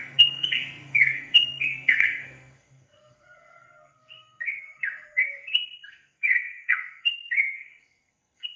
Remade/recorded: remade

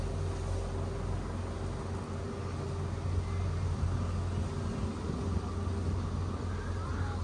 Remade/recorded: recorded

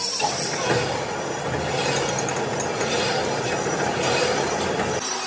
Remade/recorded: recorded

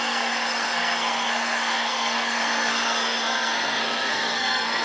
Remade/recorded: remade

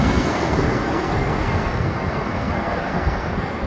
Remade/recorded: remade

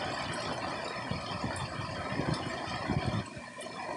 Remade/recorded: recorded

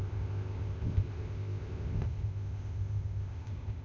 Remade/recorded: remade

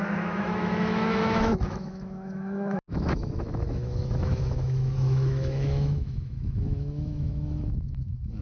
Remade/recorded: remade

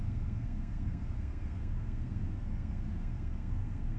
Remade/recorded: remade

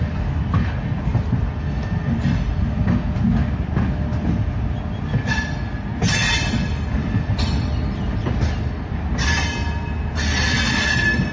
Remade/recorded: recorded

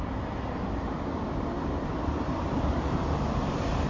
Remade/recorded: remade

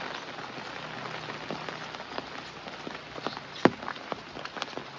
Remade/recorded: recorded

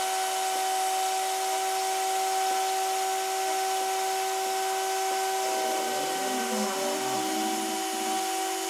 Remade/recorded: recorded